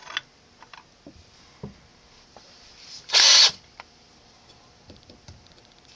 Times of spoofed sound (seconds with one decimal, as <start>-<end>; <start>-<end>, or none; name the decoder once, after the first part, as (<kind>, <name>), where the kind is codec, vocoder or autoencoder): 1.9-5.5 (vocoder, BigVGAN v2)

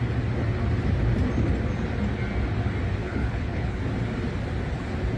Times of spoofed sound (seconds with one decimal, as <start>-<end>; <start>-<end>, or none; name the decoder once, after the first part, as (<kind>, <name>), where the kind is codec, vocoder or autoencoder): 3.0-3.8 (codec, HILCodec)

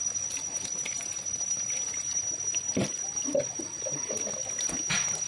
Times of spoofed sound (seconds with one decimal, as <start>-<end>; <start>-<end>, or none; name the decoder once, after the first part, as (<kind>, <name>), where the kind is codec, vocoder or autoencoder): none

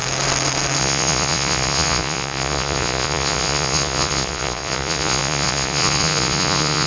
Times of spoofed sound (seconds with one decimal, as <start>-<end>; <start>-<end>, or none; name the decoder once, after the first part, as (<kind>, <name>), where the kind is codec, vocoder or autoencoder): 0.8-6.9 (vocoder, Vocos)

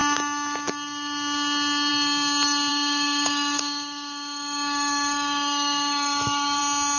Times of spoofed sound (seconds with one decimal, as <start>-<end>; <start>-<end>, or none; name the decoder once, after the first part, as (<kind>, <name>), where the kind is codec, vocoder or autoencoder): 2.7-6.6 (autoencoder, DAC-VAE)